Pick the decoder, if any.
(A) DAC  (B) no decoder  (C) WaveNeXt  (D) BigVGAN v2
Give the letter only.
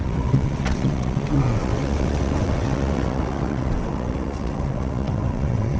C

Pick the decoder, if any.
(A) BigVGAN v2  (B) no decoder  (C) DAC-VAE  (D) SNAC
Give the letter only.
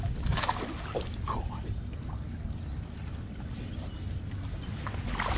B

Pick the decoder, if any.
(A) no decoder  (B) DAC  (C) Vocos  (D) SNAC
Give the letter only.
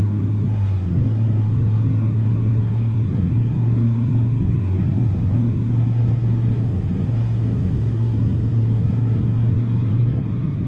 D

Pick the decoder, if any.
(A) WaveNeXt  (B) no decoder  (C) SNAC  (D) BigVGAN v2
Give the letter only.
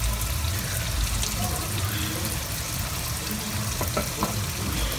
B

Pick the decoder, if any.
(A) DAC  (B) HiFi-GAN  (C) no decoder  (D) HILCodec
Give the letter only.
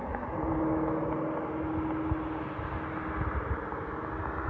C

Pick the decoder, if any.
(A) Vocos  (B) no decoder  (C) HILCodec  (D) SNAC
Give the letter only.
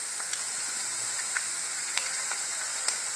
A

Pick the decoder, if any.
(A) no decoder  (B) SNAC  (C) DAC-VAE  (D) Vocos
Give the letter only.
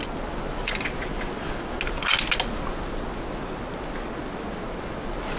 A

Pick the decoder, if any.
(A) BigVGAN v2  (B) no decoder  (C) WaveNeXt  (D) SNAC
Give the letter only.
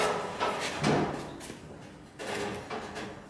B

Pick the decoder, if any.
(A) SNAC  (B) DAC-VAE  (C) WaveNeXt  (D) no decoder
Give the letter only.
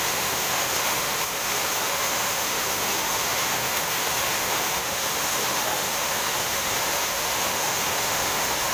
B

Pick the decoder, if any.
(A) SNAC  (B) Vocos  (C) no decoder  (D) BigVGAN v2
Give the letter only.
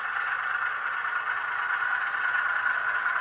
C